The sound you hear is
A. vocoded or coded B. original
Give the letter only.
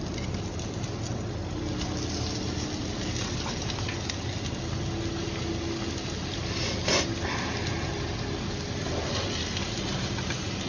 B